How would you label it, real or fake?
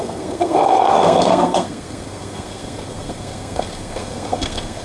fake